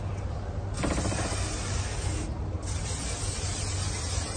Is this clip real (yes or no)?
yes